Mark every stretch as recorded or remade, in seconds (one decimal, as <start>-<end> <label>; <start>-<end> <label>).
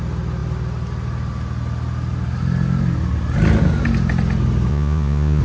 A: 0.0-4.7 recorded; 4.7-5.4 remade